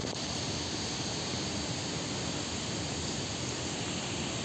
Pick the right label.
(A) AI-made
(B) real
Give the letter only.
B